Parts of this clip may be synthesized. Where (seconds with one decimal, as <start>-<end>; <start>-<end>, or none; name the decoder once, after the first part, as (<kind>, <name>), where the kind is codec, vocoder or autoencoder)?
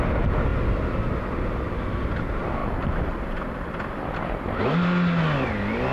2.6-4.6 (vocoder, BigVGAN v2)